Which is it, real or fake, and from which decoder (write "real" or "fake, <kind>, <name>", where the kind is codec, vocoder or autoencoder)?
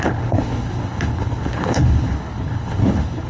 fake, codec, HILCodec